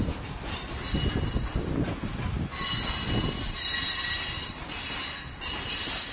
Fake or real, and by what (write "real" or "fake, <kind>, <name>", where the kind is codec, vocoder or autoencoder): real